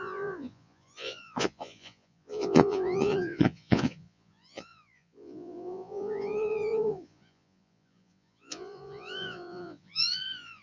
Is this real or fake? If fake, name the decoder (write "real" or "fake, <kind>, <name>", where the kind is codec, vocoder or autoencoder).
fake, vocoder, Vocos